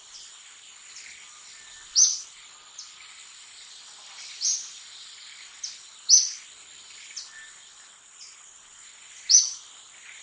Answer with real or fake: real